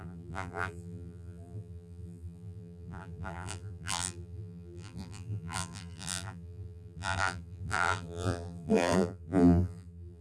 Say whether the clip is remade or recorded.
remade